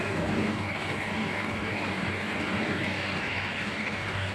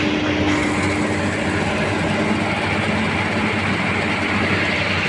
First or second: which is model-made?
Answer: first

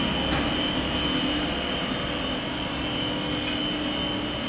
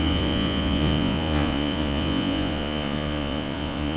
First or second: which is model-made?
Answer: second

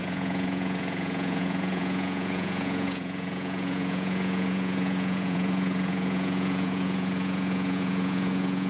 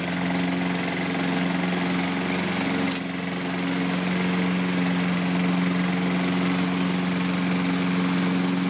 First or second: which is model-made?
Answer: first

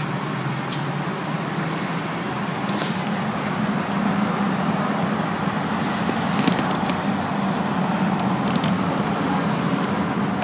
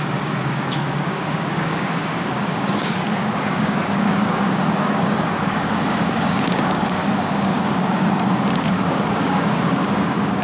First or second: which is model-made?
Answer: second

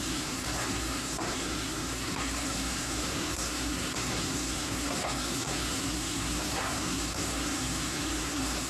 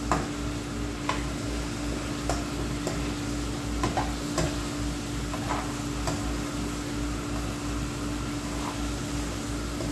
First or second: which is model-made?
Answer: first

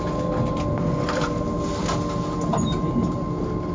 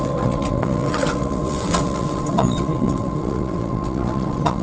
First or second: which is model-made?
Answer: second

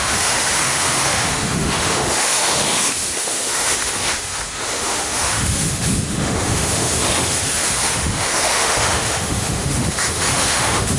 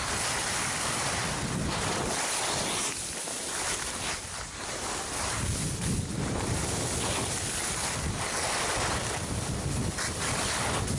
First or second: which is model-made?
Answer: first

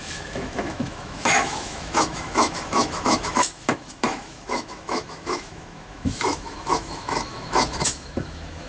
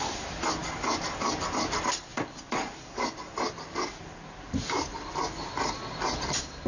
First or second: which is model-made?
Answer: first